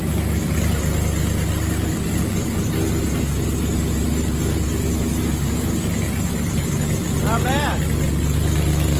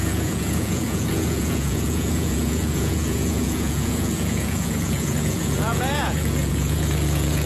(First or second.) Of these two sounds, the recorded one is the first